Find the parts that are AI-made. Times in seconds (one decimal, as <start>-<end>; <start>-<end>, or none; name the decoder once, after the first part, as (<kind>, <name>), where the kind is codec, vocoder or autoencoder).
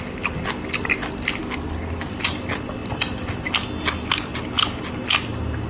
1.4-2.1 (codec, SNAC)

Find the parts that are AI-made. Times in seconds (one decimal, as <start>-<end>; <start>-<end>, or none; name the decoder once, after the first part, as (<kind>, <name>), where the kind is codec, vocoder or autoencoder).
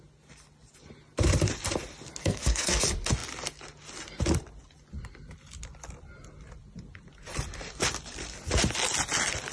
2.2-2.8 (codec, SNAC)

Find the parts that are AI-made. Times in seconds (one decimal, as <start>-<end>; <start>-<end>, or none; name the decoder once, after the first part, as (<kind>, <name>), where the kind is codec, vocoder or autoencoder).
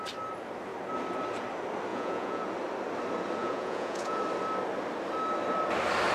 1.9-2.4 (vocoder, Vocos); 3.4-4.2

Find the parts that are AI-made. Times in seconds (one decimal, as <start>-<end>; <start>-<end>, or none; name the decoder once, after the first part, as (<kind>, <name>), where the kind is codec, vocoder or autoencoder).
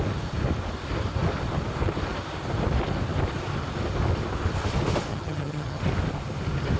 5.1-5.8 (vocoder, HiFi-GAN)